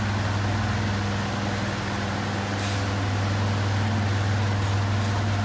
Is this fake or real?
real